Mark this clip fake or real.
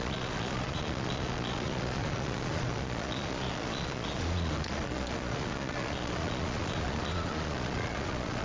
fake